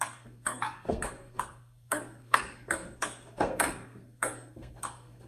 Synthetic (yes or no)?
yes